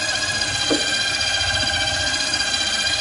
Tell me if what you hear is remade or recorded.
remade